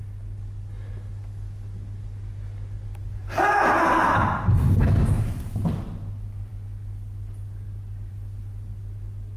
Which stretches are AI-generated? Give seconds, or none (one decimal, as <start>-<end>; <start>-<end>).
3.0-5.5